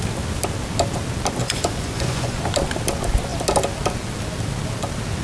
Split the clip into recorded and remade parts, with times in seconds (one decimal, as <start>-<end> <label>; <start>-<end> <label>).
0.0-1.4 recorded; 1.4-2.4 remade; 2.4-5.2 recorded